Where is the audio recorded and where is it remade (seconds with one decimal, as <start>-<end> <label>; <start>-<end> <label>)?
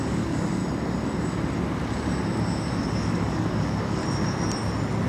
0.0-0.6 remade; 0.6-3.0 recorded; 3.0-4.0 remade; 4.0-5.1 recorded